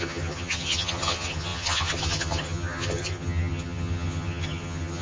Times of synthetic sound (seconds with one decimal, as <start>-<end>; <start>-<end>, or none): 0.0-5.0